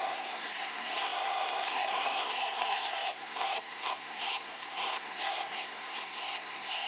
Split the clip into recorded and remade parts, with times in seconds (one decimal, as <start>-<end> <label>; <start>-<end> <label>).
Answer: 0.0-6.9 remade